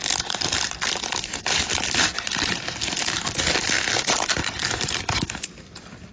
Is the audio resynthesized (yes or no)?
yes